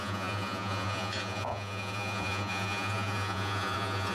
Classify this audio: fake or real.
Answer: fake